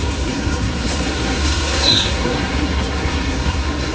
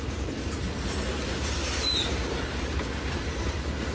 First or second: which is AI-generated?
first